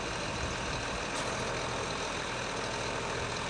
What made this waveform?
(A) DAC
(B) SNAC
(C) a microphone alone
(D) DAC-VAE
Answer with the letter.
C